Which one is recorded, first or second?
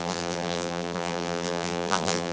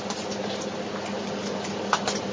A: second